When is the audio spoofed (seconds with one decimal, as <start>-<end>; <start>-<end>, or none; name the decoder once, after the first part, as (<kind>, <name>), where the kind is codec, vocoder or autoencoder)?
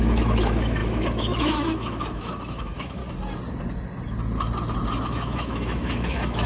0.0-3.0 (autoencoder, DAC-VAE); 5.0-6.5